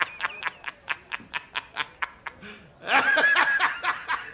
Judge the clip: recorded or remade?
remade